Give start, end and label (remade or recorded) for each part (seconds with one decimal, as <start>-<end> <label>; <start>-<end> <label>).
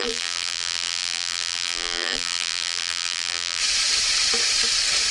0.0-3.6 remade; 3.6-5.1 recorded